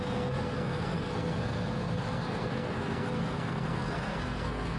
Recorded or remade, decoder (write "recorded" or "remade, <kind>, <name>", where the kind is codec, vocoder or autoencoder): remade, codec, SNAC